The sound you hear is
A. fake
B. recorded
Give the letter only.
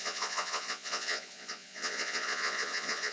A